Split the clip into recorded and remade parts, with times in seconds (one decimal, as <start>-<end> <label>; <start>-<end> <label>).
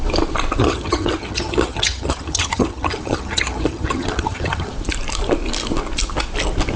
0.0-0.6 recorded; 0.6-4.7 remade; 4.7-6.8 recorded